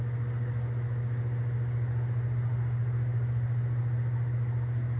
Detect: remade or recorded recorded